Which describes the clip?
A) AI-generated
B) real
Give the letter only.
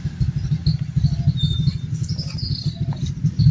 B